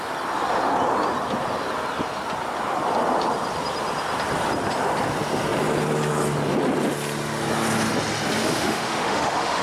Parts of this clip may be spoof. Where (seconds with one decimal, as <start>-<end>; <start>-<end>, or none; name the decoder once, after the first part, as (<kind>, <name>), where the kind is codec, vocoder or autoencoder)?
8.4-9.6 (autoencoder, DAC-VAE)

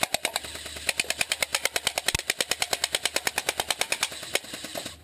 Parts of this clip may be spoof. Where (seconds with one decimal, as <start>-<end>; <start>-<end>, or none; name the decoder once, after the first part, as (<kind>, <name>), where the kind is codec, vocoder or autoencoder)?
none

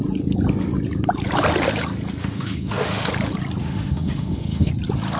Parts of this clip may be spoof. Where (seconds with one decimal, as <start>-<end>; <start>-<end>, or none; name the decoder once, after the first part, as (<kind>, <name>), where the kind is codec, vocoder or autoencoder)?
2.2-3.1 (autoencoder, DAC-VAE); 3.6-4.7

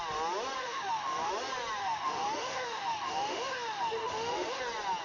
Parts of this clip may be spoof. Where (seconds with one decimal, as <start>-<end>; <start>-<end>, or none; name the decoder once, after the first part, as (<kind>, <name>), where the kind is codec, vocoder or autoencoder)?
0.6-1.3 (autoencoder, DAC-VAE); 1.8-4.6

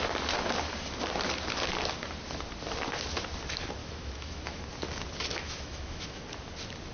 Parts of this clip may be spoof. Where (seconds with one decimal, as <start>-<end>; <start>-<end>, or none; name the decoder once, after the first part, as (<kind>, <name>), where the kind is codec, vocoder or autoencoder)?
3.8-4.6 (autoencoder, DAC-VAE); 5.3-6.2

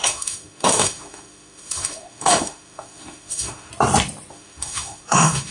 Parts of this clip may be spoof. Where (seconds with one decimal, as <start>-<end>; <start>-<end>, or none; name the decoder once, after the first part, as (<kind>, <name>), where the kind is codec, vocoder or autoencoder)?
0.0-3.7 (autoencoder, DAC-VAE); 4.3-5.5

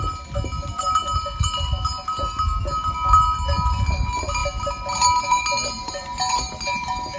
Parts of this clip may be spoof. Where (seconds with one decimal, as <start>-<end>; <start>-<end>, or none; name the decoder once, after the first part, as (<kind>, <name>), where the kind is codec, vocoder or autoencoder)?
none